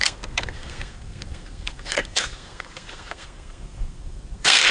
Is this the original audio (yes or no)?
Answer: no